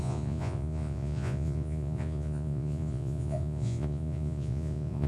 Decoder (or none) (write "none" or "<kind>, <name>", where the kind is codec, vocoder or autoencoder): vocoder, Vocos